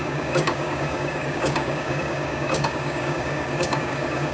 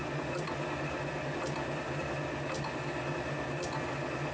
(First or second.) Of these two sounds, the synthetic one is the first